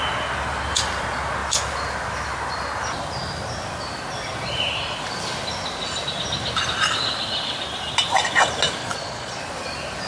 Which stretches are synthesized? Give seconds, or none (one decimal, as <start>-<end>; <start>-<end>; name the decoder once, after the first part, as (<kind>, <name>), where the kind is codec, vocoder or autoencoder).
8.8-9.4 (vocoder, Vocos)